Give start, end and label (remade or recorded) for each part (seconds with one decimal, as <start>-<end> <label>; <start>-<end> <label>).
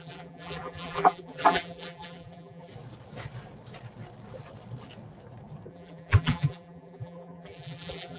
0.0-2.7 remade; 2.7-5.7 recorded; 5.7-8.2 remade